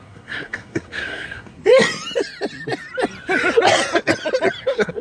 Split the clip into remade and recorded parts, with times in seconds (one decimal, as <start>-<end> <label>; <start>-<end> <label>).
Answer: 0.0-1.6 remade; 1.6-4.6 recorded; 4.6-5.0 remade